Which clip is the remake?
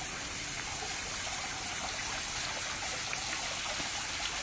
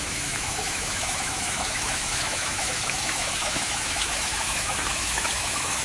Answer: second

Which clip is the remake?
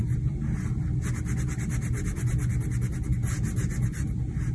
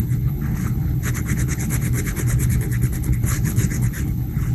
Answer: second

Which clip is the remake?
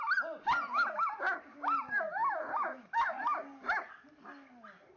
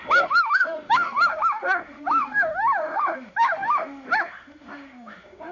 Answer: second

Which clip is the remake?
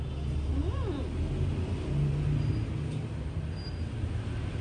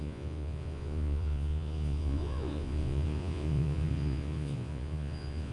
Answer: second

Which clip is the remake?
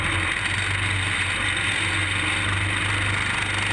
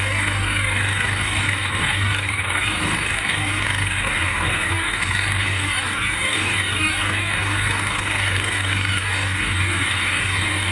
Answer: second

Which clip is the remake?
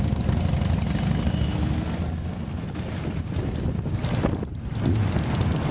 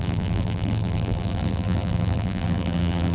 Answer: second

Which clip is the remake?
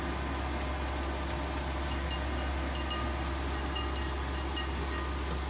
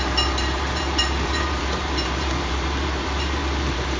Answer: second